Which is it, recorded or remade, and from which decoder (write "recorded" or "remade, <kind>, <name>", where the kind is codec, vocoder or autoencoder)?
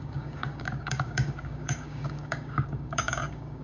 remade, codec, DAC